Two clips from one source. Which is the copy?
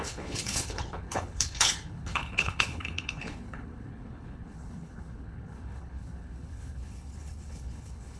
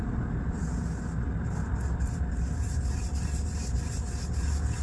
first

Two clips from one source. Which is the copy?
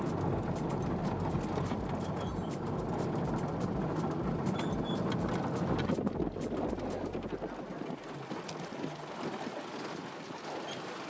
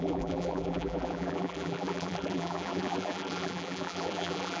second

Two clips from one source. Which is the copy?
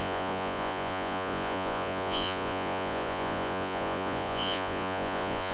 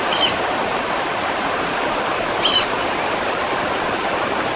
first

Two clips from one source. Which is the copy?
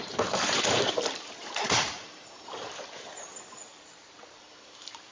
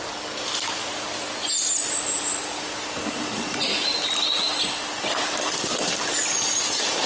first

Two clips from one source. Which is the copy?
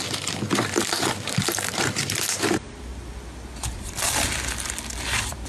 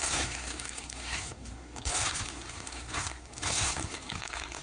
second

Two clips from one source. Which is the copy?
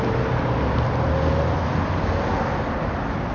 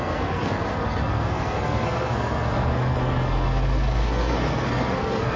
second